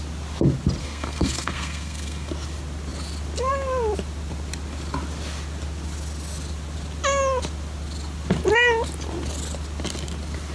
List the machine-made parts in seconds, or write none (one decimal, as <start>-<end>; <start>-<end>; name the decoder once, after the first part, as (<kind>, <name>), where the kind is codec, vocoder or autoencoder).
0.8-2.3 (codec, SNAC)